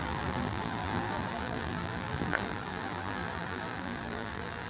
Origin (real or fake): fake